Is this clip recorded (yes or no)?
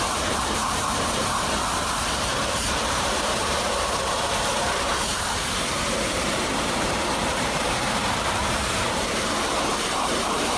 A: no